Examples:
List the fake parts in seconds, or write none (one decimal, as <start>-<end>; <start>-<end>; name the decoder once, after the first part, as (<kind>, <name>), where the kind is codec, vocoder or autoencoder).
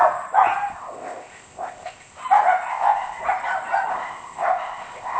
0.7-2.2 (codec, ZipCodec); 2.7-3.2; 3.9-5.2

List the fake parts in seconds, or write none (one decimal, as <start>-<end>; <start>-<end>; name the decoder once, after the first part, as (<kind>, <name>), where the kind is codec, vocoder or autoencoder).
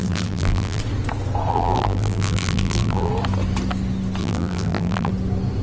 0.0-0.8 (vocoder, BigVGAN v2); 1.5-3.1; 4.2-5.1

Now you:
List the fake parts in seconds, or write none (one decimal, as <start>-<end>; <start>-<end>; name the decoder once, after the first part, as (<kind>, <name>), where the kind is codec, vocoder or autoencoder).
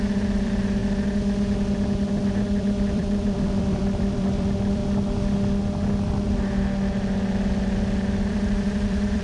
0.0-0.8 (vocoder, BigVGAN v2); 2.6-4.8; 8.3-9.2